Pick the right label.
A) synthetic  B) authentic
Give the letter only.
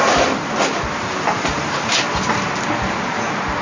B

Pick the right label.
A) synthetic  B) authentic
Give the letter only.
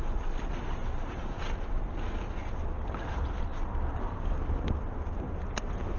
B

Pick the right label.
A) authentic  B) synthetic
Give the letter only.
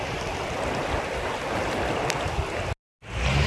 A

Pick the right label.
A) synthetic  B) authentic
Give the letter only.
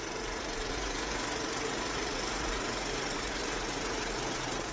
A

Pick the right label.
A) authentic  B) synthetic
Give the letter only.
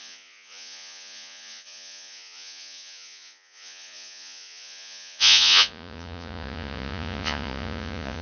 B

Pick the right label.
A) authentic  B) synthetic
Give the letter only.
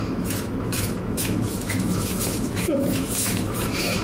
B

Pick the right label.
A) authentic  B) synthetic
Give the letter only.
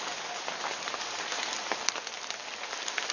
A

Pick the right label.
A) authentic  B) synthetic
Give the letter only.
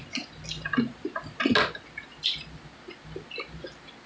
A